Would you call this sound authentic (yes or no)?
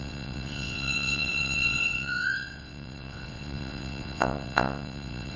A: no